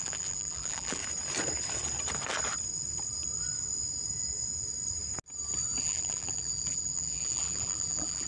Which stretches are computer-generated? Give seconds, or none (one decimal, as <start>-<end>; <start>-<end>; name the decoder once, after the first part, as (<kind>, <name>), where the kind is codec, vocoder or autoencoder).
0.0-1.0 (vocoder, BigVGAN v2); 5.8-8.3